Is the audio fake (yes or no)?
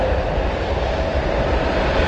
no